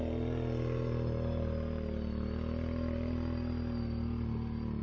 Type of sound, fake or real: real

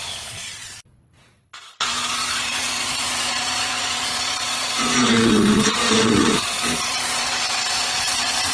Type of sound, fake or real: fake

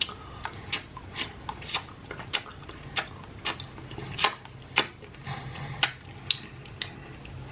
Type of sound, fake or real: real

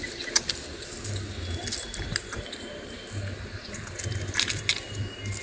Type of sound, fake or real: real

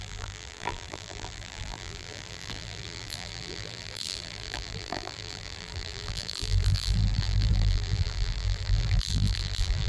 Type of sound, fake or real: fake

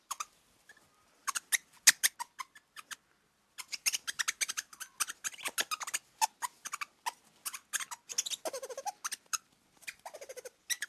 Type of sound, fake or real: real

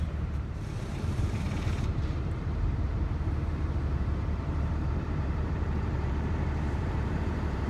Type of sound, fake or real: fake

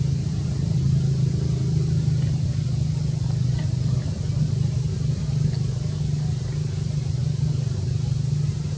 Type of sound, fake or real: real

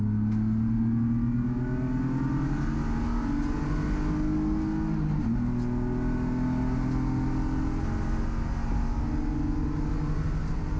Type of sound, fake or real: real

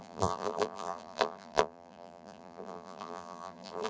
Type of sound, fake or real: fake